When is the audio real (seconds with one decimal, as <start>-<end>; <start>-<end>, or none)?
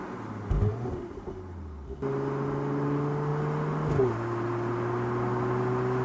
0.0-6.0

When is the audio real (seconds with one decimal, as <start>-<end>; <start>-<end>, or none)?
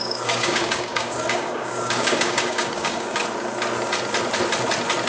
3.2-5.1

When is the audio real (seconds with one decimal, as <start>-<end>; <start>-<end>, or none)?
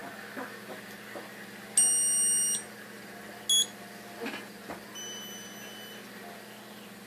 0.0-7.1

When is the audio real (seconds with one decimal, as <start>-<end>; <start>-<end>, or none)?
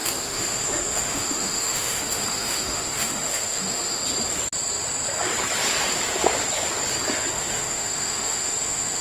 4.0-7.3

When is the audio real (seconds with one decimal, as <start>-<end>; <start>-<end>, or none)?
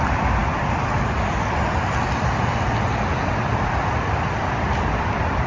0.4-3.7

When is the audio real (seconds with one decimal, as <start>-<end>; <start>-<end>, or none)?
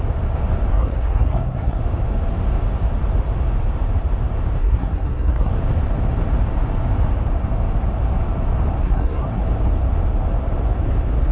0.0-0.7; 1.8-4.6; 5.5-8.8; 9.4-11.3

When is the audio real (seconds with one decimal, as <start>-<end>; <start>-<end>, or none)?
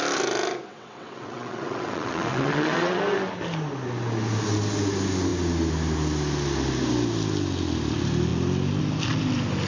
0.0-0.7; 3.0-9.7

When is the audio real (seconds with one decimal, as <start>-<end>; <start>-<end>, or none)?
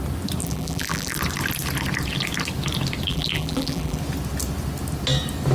0.0-0.4; 1.1-3.1; 4.0-5.5